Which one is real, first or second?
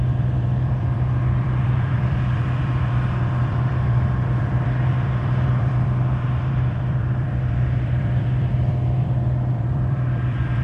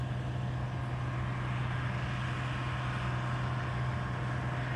second